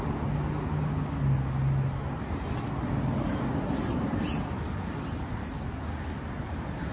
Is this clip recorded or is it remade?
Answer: recorded